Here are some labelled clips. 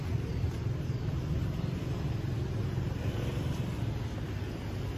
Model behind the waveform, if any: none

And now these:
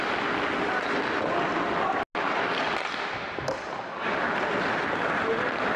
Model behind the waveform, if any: none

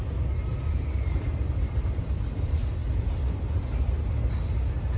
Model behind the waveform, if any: none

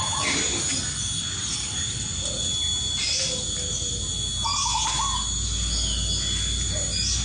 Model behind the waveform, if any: none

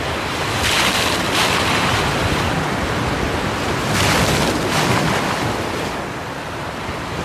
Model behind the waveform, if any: none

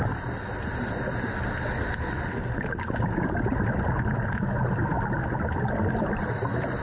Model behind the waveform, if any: none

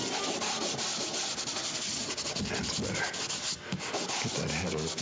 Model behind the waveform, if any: none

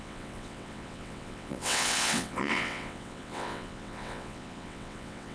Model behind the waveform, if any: vocoder, WaveNeXt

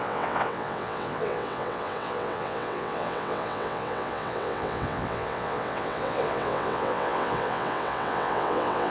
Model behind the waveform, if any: vocoder, WaveNeXt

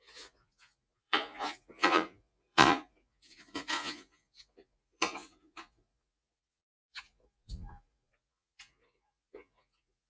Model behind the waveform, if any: vocoder, Vocos